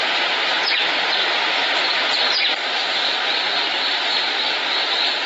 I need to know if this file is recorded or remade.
recorded